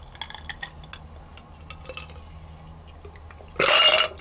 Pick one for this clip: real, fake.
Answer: real